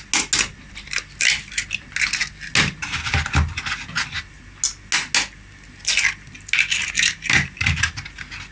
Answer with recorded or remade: recorded